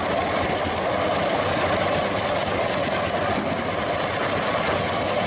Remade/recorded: recorded